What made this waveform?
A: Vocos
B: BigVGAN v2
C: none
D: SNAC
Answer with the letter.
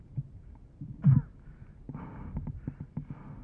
C